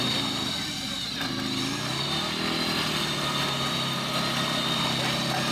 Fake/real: real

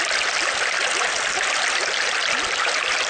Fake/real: real